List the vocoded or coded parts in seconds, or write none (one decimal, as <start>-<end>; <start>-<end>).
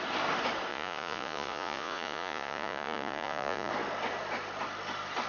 0.7-3.7